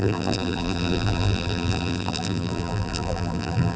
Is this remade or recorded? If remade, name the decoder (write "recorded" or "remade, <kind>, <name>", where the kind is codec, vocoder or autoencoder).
remade, vocoder, BigVGAN v2